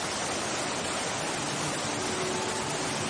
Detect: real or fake real